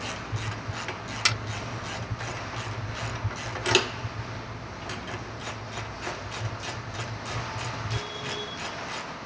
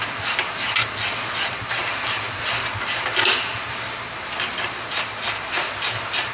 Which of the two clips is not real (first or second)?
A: second